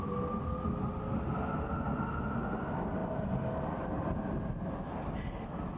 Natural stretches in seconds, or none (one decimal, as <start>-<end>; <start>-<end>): 0.0-5.8